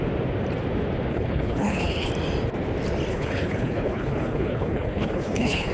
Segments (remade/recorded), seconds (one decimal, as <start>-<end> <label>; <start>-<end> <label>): 0.0-1.1 recorded; 1.1-2.1 remade; 2.1-3.1 recorded; 3.1-5.7 remade